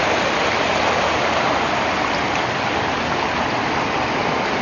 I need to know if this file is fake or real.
real